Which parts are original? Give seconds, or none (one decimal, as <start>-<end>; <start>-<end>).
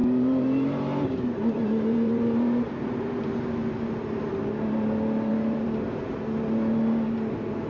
4.3-5.3; 6.2-7.7